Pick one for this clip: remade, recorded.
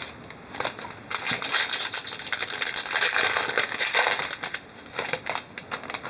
recorded